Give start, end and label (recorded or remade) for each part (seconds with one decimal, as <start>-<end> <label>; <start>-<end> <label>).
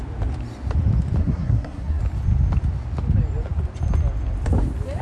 0.0-1.2 recorded; 1.2-2.0 remade; 2.0-5.0 recorded